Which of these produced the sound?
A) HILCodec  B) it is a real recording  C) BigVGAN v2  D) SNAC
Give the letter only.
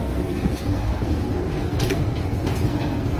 D